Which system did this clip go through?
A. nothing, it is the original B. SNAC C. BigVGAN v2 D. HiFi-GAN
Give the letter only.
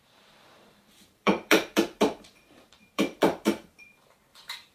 C